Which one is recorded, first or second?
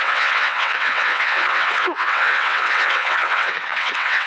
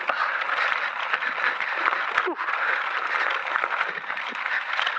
second